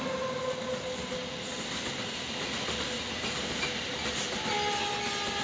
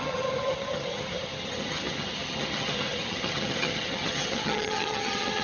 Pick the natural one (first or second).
first